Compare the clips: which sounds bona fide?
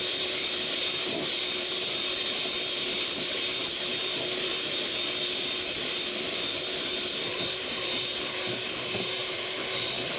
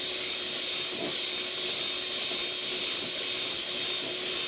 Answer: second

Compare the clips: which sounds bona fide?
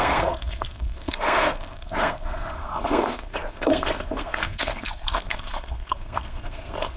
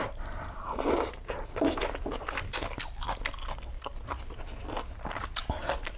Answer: second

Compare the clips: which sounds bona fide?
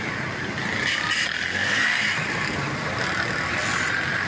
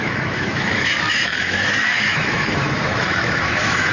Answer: first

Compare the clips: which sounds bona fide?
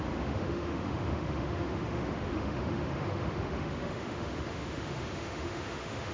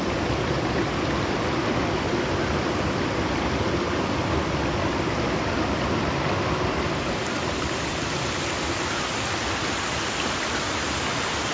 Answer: second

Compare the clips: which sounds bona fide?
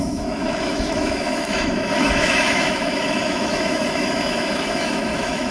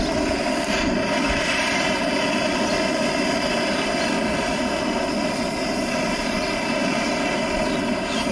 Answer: second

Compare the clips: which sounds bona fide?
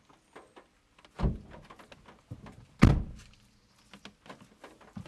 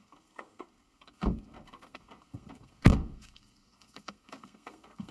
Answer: first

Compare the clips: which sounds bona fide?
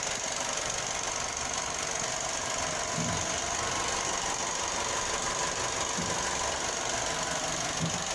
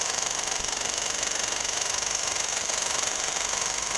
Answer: first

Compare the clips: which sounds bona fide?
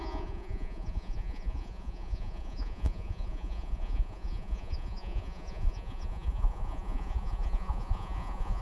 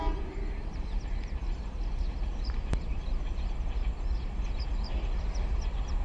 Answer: second